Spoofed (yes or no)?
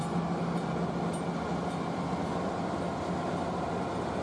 no